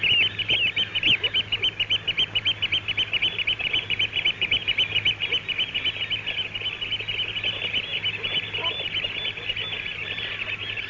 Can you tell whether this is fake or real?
real